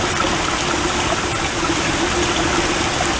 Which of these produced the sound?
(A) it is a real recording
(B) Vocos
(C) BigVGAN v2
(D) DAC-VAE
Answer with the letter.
A